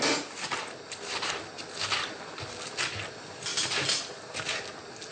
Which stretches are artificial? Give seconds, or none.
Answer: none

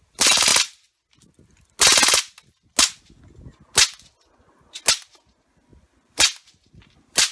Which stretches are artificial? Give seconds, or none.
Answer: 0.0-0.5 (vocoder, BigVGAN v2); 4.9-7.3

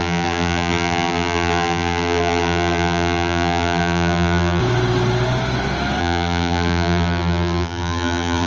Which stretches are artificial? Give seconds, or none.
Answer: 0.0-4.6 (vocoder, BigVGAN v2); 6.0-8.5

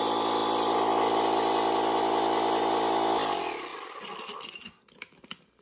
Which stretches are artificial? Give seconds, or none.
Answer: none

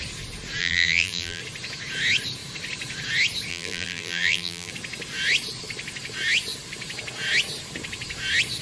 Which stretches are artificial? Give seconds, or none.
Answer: 0.6-1.4 (vocoder, BigVGAN v2); 3.5-4.7

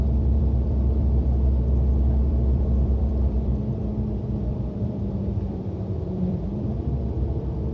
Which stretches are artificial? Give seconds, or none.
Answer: 0.0-3.5 (vocoder, BigVGAN v2); 4.5-7.7

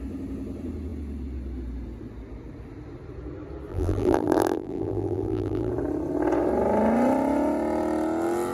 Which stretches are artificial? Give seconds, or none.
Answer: 3.7-5.7 (vocoder, BigVGAN v2)

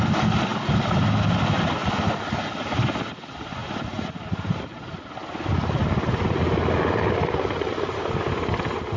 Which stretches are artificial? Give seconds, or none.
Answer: 3.6-4.6 (vocoder, BigVGAN v2)